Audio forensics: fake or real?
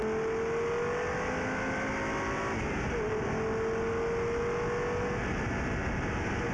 real